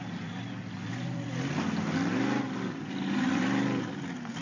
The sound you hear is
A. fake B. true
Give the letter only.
B